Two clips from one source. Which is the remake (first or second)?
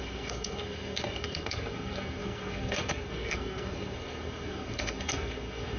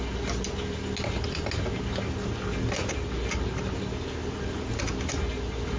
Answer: first